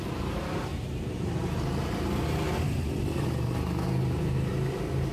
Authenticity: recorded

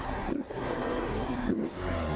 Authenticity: remade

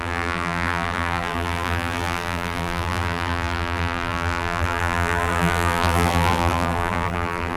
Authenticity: remade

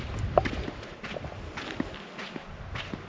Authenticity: recorded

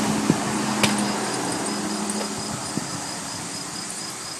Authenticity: recorded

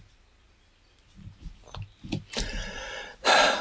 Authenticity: recorded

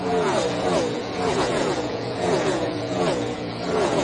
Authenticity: remade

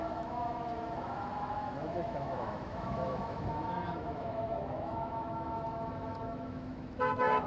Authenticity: remade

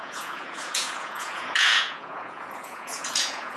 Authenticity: remade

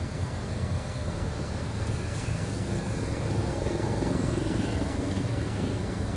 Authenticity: remade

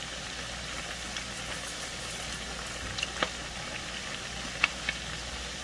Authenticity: recorded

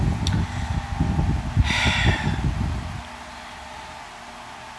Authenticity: recorded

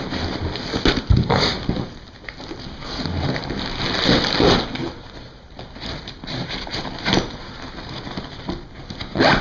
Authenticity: recorded